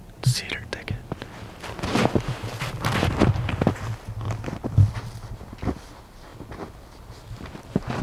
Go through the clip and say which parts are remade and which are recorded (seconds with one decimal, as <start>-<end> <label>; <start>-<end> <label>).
0.0-8.0 recorded